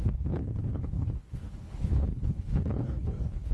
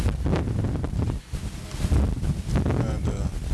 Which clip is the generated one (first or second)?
first